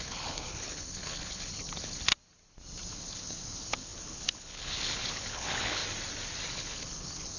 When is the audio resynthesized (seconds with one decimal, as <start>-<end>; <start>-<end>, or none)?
0.0-2.1; 2.9-5.8; 6.5-7.4

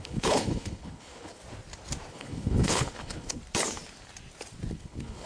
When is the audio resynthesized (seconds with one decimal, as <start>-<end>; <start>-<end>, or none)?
0.0-1.4; 2.1-3.4; 4.7-5.3

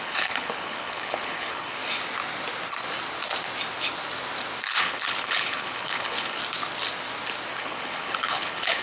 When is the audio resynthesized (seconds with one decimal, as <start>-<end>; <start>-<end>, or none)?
0.0-1.8; 4.8-6.4; 7.5-8.8